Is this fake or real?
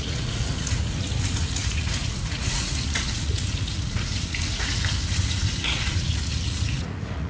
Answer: fake